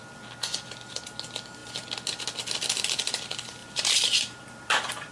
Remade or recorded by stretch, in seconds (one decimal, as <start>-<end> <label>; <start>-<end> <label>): 0.0-3.6 recorded; 3.6-5.1 remade